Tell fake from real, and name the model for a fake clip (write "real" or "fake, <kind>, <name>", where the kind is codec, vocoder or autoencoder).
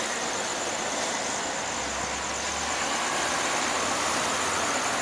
real